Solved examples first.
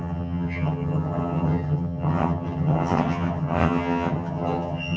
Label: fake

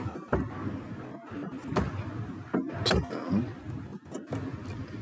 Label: real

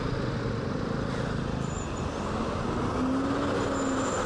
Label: real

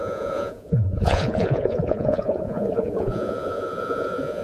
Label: fake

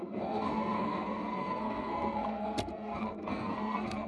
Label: fake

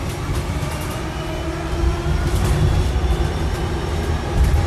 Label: real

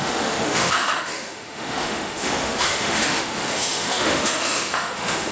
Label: fake